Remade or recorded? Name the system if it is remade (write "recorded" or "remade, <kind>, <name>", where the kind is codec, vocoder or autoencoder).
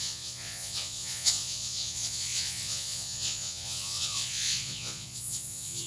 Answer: remade, vocoder, Vocos